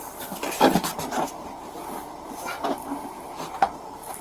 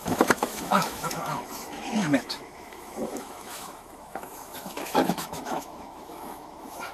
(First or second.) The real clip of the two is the first